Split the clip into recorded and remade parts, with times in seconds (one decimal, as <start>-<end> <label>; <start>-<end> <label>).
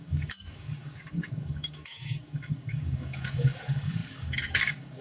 0.0-5.0 remade